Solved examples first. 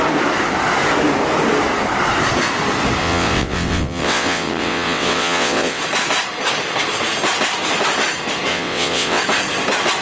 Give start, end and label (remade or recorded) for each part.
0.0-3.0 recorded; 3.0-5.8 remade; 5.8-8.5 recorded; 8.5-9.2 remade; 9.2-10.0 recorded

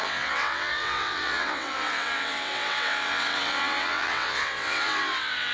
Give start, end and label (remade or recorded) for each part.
0.0-5.5 remade

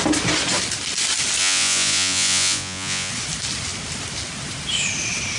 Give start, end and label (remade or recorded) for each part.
0.0-1.4 recorded; 1.4-3.1 remade; 3.1-5.4 recorded

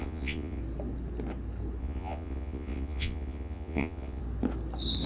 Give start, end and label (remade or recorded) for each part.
0.0-0.6 remade; 0.6-1.8 recorded; 1.8-4.2 remade; 4.2-5.1 recorded

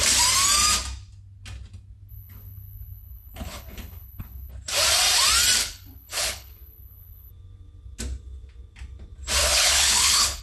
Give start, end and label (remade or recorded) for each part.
0.0-2.1 recorded; 2.1-4.5 remade; 4.5-5.6 recorded; 5.6-7.3 remade; 7.3-9.4 recorded; 9.4-10.4 remade

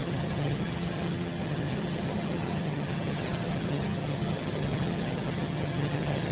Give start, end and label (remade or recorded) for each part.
0.0-6.3 remade

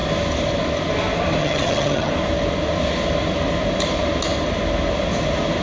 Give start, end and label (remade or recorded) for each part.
0.0-1.4 recorded; 1.4-2.1 remade; 2.1-5.6 recorded